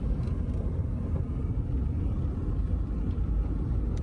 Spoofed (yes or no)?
no